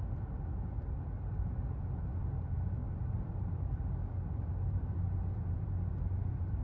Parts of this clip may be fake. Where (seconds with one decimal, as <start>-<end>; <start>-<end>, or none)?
2.8-6.0

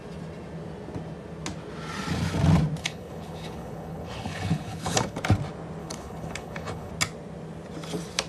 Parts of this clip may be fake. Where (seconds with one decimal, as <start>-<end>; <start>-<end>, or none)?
2.8-5.2; 5.8-6.9